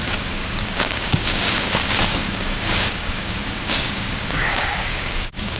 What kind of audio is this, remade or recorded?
remade